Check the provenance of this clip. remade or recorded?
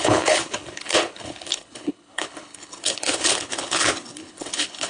remade